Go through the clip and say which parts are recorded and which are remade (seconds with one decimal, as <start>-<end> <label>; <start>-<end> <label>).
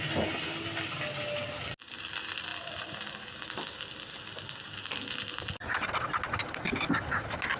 0.0-7.6 recorded